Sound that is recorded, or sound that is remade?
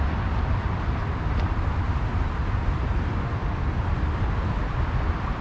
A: recorded